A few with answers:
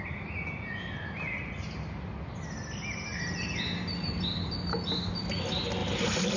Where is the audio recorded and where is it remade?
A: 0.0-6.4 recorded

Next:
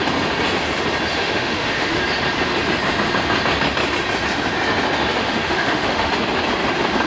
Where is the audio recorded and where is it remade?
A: 0.0-1.2 recorded; 1.2-2.0 remade; 2.0-5.2 recorded; 5.2-6.1 remade; 6.1-7.1 recorded

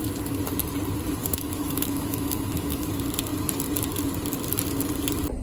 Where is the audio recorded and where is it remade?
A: 0.0-1.2 recorded; 1.2-2.9 remade; 2.9-5.4 recorded

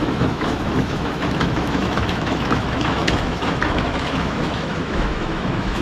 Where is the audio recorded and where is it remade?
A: 0.0-5.8 remade